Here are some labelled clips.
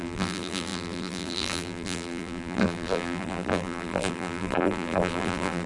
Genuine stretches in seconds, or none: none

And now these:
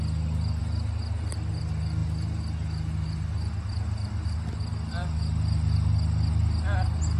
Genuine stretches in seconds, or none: 0.0-7.2

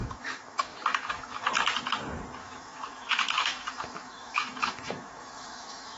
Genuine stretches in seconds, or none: 1.5-2.4